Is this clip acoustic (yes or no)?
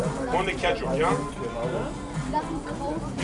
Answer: yes